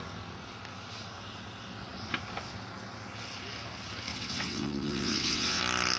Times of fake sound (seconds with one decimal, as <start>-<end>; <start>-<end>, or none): 4.1-5.6